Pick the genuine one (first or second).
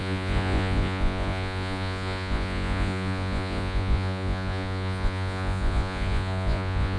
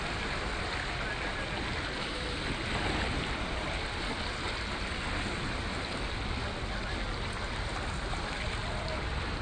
second